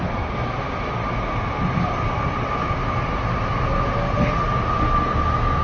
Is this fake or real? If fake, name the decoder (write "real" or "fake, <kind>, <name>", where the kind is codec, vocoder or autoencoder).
real